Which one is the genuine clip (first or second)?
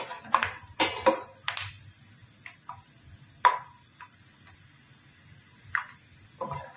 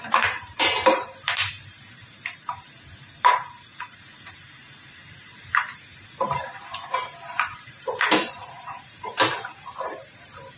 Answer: first